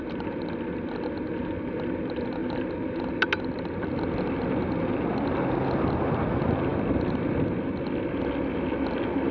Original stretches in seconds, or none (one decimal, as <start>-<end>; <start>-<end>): 0.0-9.3